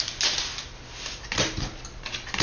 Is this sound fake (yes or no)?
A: no